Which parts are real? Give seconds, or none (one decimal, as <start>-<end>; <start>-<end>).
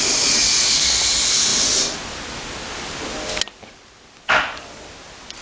0.0-5.4